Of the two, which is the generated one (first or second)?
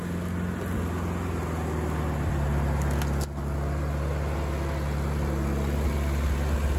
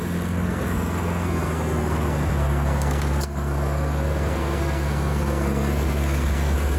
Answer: second